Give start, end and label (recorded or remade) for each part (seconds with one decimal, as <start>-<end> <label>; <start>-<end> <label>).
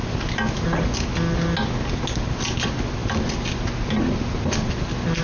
0.0-5.2 recorded